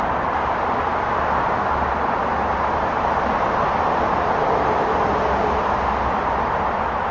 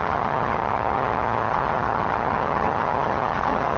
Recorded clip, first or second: first